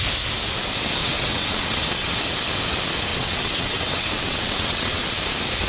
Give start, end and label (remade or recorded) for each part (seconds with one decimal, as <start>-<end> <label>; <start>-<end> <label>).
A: 0.0-1.0 recorded; 1.0-2.2 remade; 2.2-3.1 recorded; 3.1-5.0 remade; 5.0-5.7 recorded